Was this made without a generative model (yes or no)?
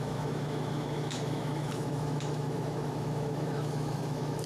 no